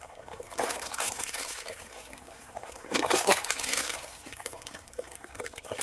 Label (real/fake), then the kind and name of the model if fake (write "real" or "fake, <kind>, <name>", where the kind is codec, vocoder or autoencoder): fake, codec, SNAC